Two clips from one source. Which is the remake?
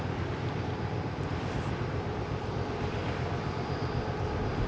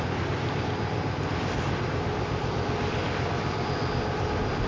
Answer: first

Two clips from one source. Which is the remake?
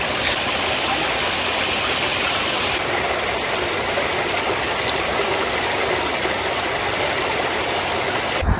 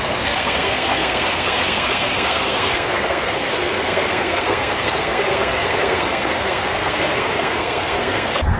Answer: second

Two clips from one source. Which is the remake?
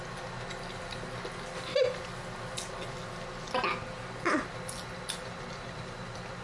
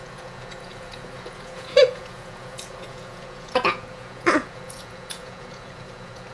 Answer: second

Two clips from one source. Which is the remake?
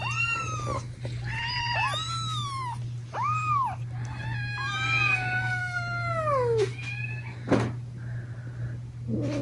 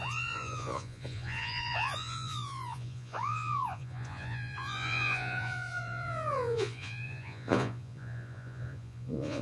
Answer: second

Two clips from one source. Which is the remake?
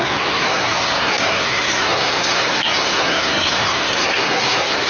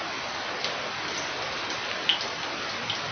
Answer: first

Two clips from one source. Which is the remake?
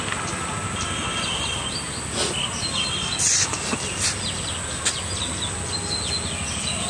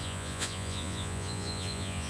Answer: second